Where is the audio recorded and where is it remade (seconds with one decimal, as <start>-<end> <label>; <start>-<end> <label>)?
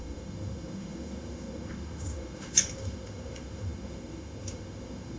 0.0-5.2 remade